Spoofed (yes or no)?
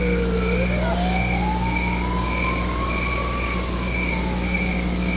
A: no